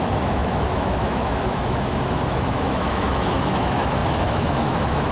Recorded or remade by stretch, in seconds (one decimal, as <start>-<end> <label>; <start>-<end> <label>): 0.0-5.1 remade

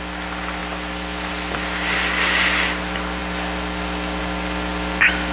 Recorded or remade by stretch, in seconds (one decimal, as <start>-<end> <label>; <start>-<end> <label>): 0.0-5.3 recorded

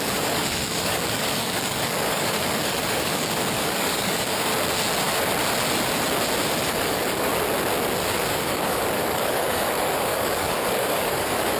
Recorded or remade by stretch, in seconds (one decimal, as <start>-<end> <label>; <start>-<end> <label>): 0.0-4.5 remade; 4.5-6.7 recorded; 6.7-7.3 remade; 7.3-8.3 recorded; 8.3-11.6 remade

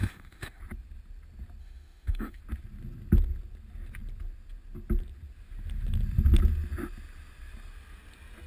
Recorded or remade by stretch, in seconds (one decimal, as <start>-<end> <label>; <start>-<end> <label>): 0.0-0.6 remade; 0.6-1.6 recorded; 1.6-2.4 remade; 2.4-8.5 recorded

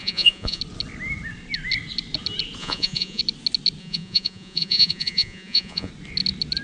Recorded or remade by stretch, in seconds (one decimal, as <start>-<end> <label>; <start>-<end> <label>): 0.0-0.6 remade; 0.6-2.6 recorded; 2.6-3.2 remade; 3.2-3.8 recorded; 3.8-5.9 remade; 5.9-6.6 recorded

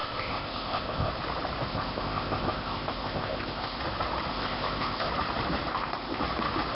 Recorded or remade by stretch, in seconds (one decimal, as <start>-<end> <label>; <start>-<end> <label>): 0.0-1.1 remade; 1.1-1.7 recorded; 1.7-3.8 remade; 3.8-4.3 recorded; 4.3-5.1 remade; 5.1-5.7 recorded; 5.7-6.2 remade; 6.2-6.7 recorded

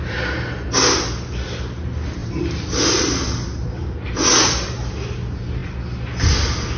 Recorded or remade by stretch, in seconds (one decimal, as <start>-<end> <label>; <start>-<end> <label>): 0.0-2.2 recorded; 2.2-4.1 remade; 4.1-6.8 recorded